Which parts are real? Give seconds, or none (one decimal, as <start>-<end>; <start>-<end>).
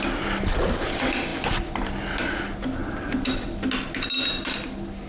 0.0-5.1